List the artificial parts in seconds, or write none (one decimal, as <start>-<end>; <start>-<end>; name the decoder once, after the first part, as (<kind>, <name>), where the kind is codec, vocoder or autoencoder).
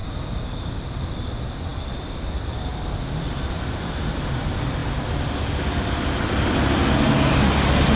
0.0-0.8 (codec, DAC)